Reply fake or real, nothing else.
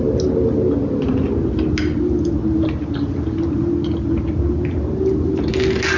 real